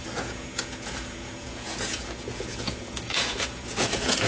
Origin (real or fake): fake